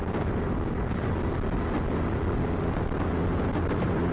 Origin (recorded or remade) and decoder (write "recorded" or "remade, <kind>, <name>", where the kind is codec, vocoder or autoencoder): recorded